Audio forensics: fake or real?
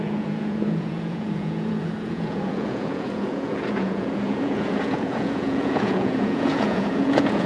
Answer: fake